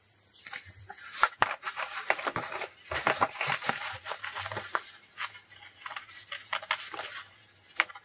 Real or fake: fake